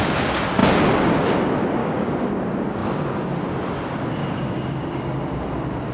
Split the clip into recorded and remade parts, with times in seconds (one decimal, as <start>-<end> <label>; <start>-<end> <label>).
0.0-1.8 recorded; 1.8-2.3 remade; 2.3-4.2 recorded; 4.2-5.0 remade; 5.0-5.9 recorded